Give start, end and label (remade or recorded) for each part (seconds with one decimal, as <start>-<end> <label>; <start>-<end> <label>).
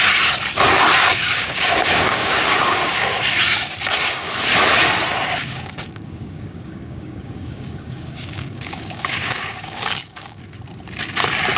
0.0-1.1 recorded; 1.1-3.2 remade; 3.2-5.4 recorded; 5.4-10.4 remade; 10.4-11.6 recorded